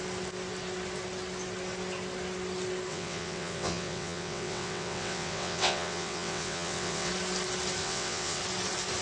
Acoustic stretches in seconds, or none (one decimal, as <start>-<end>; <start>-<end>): 0.0-2.9; 7.1-7.8; 8.4-9.0